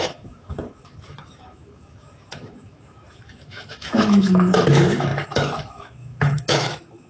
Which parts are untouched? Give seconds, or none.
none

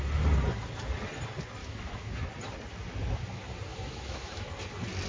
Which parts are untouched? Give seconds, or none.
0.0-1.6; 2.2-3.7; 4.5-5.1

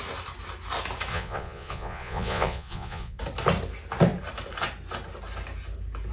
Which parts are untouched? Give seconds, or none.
0.0-1.1; 3.2-6.1

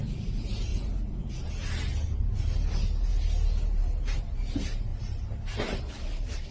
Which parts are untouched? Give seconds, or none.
0.0-6.5